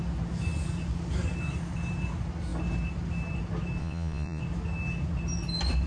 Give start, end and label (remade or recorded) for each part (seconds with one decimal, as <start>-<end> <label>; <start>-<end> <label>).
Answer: 0.0-3.8 recorded; 3.8-4.4 remade; 4.4-5.9 recorded